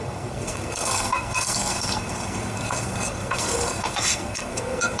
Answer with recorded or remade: remade